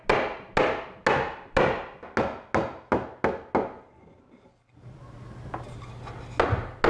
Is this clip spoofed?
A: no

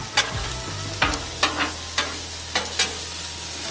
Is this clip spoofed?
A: no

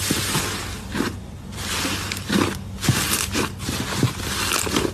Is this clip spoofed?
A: no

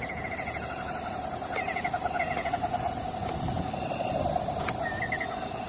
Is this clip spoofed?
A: no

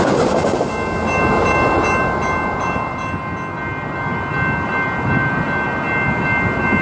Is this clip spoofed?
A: no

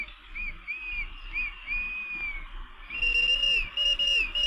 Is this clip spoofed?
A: no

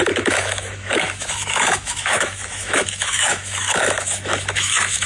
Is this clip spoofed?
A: yes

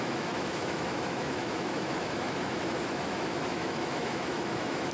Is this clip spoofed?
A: yes